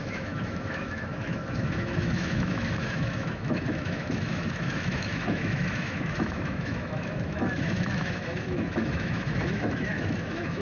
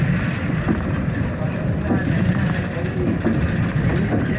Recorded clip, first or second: second